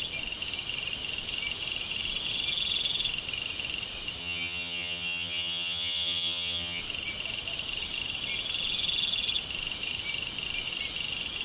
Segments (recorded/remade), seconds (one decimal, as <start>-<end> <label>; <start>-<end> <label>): 0.0-4.2 recorded; 4.2-6.8 remade; 6.8-11.4 recorded